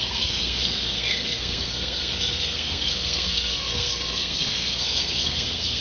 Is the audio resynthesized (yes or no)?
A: yes